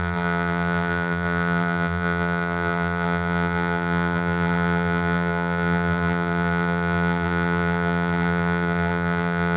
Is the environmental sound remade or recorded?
remade